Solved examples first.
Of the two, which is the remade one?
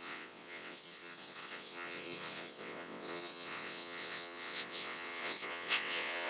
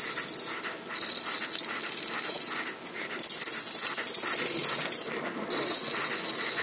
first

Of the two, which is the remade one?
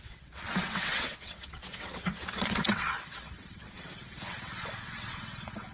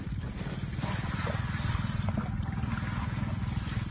first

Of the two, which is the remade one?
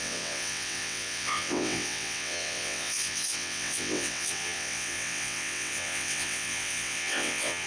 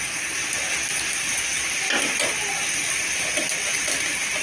first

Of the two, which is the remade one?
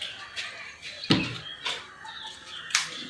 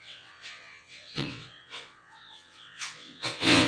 second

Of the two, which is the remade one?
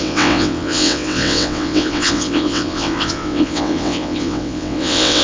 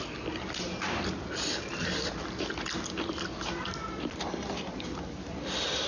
first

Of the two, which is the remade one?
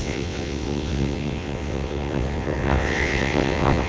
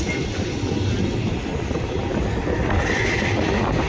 first